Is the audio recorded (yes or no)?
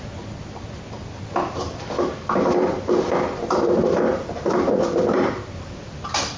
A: no